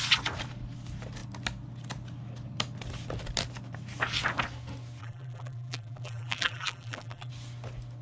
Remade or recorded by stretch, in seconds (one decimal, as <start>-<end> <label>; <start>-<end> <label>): 0.0-5.0 recorded; 5.0-7.3 remade; 7.3-8.0 recorded